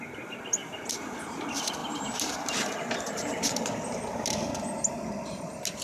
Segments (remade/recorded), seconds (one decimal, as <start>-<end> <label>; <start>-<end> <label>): 0.0-1.8 recorded; 1.8-3.7 remade; 3.7-5.8 recorded